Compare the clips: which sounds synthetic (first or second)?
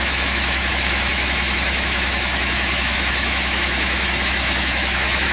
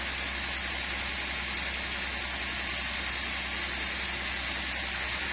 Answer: first